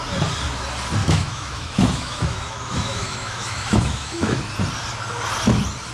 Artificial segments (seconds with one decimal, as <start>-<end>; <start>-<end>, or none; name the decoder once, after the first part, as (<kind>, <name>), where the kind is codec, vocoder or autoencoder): 1.0-4.5 (autoencoder, DAC-VAE)